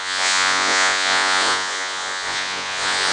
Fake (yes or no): yes